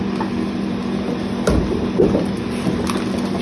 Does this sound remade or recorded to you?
recorded